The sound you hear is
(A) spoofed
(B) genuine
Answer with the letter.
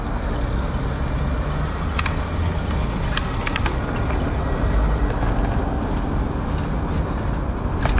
B